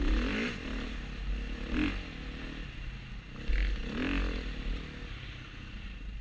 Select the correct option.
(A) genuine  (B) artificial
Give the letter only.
A